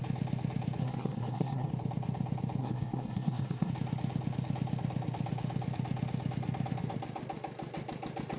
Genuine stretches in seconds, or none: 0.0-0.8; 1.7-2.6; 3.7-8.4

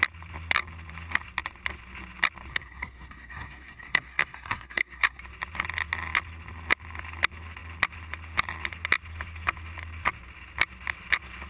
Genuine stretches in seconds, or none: 0.0-2.5; 5.2-11.5

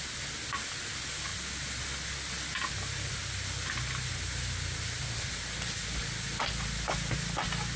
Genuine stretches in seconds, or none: 0.0-7.8

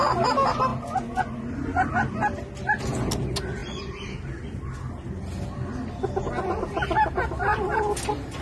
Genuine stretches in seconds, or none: 0.0-7.5